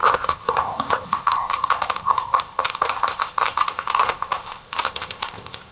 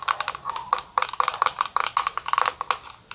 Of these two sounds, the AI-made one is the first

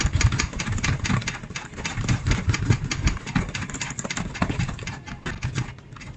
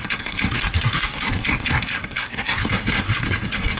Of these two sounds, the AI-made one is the second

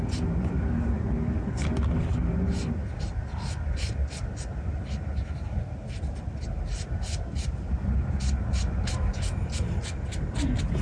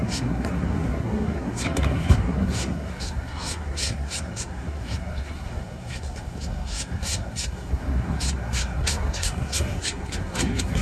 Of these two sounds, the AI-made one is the second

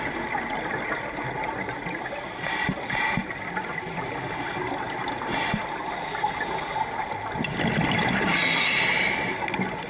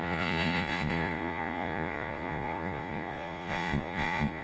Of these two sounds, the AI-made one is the second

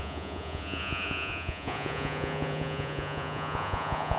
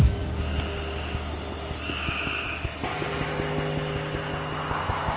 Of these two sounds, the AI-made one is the first